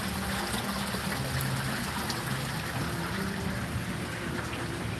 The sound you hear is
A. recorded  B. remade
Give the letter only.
A